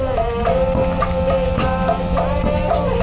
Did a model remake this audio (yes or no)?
no